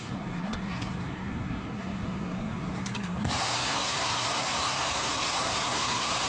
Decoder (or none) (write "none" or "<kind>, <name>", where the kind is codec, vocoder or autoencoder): codec, SNAC